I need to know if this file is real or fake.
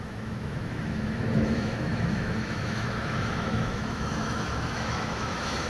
fake